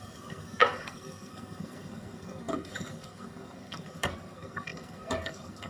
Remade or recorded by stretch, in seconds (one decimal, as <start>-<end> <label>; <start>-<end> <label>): 0.0-5.7 remade

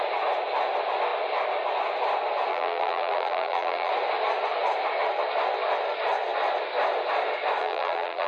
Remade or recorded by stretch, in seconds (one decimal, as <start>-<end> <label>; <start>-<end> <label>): 0.0-2.5 recorded; 2.5-3.9 remade; 3.9-7.6 recorded; 7.6-8.3 remade

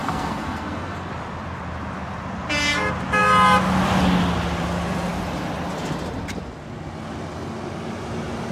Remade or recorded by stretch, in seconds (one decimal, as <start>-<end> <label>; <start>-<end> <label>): 0.0-1.1 remade; 1.1-8.5 recorded

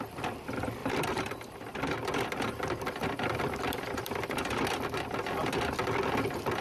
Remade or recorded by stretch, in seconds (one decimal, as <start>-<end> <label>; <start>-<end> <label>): 0.0-0.8 recorded; 0.8-4.5 remade; 4.5-6.6 recorded